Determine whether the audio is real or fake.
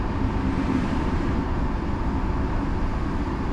real